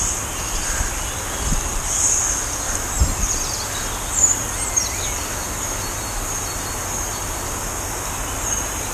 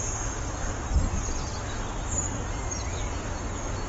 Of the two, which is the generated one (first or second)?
second